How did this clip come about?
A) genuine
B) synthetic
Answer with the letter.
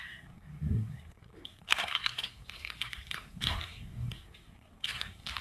B